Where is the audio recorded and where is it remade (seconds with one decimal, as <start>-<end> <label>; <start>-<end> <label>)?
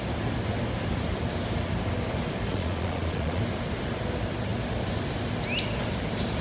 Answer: 0.0-2.5 recorded; 2.5-3.4 remade; 3.4-6.4 recorded